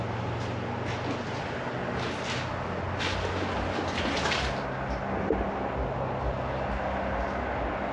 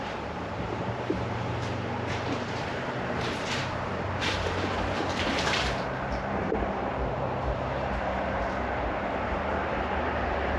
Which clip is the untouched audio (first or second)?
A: first